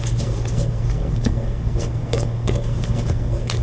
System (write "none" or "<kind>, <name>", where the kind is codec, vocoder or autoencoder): codec, SNAC